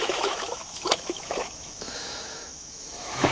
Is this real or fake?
fake